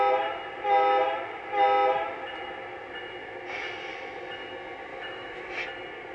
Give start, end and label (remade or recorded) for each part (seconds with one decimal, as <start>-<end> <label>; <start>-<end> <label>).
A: 0.0-4.9 recorded; 4.9-5.6 remade; 5.6-6.1 recorded